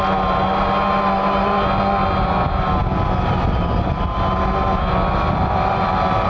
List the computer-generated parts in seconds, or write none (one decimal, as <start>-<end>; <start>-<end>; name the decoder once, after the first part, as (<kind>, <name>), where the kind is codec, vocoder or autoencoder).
none